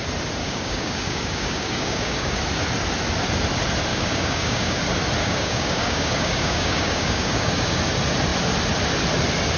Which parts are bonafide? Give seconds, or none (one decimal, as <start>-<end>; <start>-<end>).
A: 0.0-0.4; 2.4-3.9; 4.8-5.2; 7.8-9.6